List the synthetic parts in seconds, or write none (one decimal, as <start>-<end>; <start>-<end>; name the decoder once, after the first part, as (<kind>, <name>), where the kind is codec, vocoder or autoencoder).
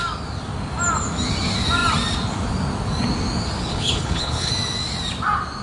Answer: 3.7-4.5 (codec, HILCodec)